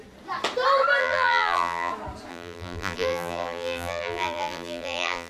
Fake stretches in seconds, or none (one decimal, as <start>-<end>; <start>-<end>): 1.0-1.9; 2.3-5.3